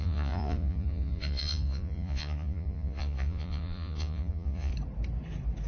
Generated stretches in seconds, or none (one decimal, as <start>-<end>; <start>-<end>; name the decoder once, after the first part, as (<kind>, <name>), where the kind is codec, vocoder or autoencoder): 0.0-4.7 (vocoder, Vocos)